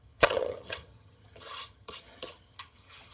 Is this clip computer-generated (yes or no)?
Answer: yes